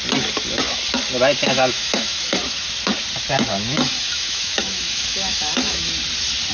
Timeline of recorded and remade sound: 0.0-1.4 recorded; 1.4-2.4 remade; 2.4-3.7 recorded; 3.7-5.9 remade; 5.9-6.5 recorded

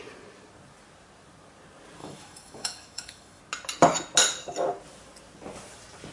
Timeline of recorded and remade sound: 0.0-2.0 recorded; 2.0-3.4 remade; 3.4-6.1 recorded

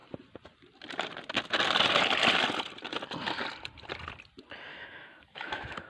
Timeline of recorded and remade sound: 0.0-4.7 recorded; 4.7-5.9 remade

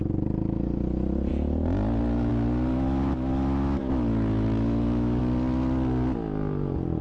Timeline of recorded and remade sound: 0.0-2.7 recorded; 2.7-5.2 remade; 5.2-7.0 recorded

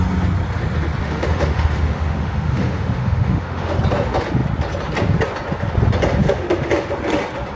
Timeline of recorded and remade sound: 0.0-1.0 recorded; 1.0-3.8 remade; 3.8-6.2 recorded; 6.2-6.7 remade; 6.7-7.6 recorded

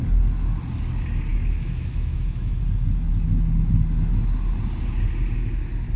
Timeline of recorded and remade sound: 0.0-1.3 recorded; 1.3-2.6 remade; 2.6-6.0 recorded

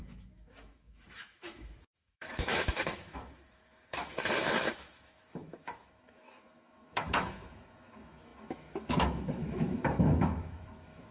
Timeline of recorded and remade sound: 0.0-11.1 remade

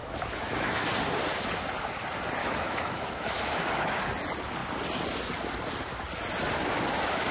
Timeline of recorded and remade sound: 0.0-0.9 remade; 0.9-2.4 recorded; 2.4-4.0 remade; 4.0-7.3 recorded